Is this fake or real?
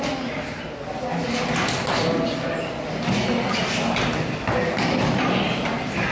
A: real